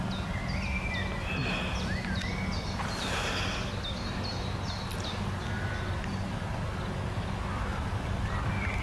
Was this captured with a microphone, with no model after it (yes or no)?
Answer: yes